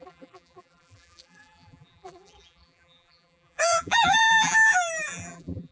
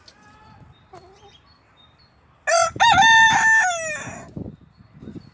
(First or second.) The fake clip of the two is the first